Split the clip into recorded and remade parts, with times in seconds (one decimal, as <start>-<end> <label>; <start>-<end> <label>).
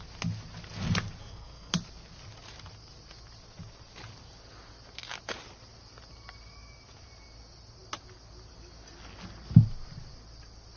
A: 0.0-1.2 recorded; 1.2-1.7 remade; 1.7-10.8 recorded